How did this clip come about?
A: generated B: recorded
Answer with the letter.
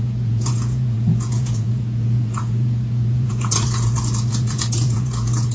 A